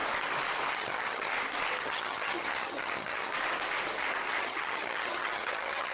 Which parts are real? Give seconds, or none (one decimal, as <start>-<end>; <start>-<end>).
0.0-0.7; 1.3-1.8; 3.3-4.4

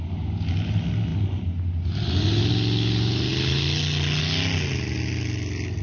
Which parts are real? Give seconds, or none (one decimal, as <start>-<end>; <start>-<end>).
0.0-5.8